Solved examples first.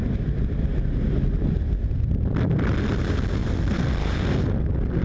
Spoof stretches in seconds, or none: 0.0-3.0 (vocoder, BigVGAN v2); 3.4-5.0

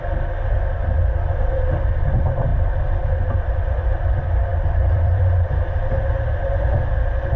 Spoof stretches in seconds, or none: 4.5-6.1 (vocoder, BigVGAN v2)

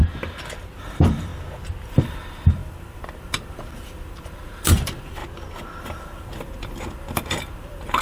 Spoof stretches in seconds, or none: 0.8-1.3 (vocoder, BigVGAN v2); 1.9-5.2; 5.8-8.0

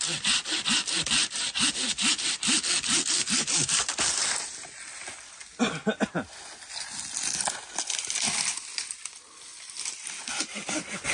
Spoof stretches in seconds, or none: 1.2-1.7 (vocoder, BigVGAN v2)

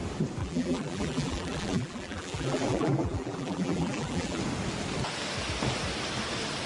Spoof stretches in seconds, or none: 0.4-4.4 (vocoder, BigVGAN v2)

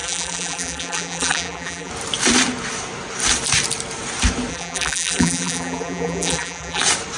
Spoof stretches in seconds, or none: 0.0-1.9 (vocoder, BigVGAN v2); 4.5-6.8

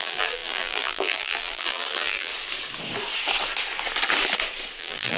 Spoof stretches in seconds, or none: 0.0-2.3 (vocoder, BigVGAN v2); 4.8-5.2